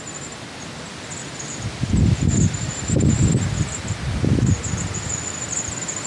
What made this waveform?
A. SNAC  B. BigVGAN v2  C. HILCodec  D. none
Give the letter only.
D